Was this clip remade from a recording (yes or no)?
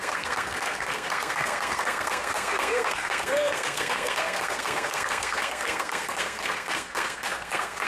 yes